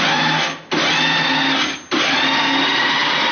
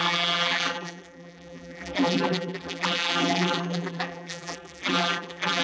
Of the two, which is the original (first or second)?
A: first